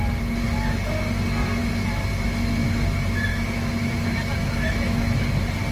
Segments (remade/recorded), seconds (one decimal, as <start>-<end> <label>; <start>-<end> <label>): 0.0-3.3 recorded; 3.3-5.2 remade; 5.2-5.7 recorded